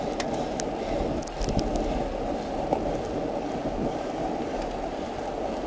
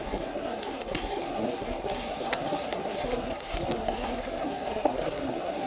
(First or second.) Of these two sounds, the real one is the first